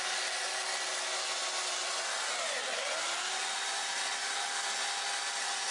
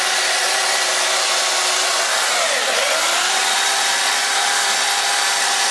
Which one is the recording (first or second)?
first